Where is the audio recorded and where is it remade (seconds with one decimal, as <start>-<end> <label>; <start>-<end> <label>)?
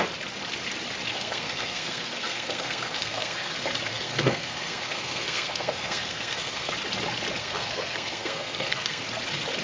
0.0-1.1 recorded; 1.1-3.5 remade; 3.5-3.9 recorded; 3.9-6.7 remade; 6.7-7.4 recorded; 7.4-9.0 remade; 9.0-9.6 recorded